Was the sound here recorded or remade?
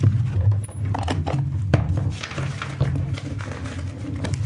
recorded